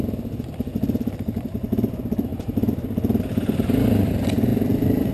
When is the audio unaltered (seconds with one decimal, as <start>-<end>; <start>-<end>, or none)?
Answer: 0.0-4.5